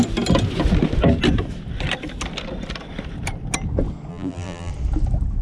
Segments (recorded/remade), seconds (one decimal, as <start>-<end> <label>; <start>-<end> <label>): 0.0-4.1 recorded; 4.1-4.7 remade; 4.7-5.4 recorded